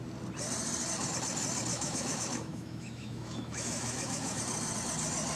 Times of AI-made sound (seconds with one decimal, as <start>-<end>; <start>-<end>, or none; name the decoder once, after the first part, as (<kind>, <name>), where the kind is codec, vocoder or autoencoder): 1.7-4.4 (autoencoder, DAC-VAE)